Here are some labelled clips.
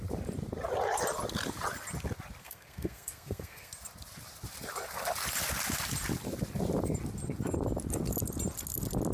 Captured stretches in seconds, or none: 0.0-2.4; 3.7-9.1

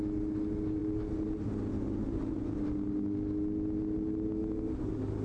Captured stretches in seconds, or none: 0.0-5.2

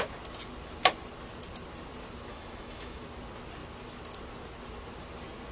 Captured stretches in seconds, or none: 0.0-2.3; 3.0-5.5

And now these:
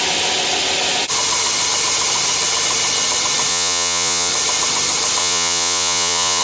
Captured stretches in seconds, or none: 0.0-3.5; 4.3-5.2